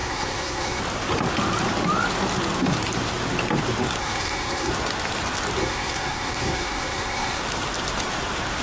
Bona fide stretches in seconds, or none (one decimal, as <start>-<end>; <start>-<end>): 0.8-4.0; 4.7-5.6; 7.4-8.6